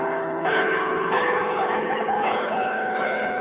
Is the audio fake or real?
fake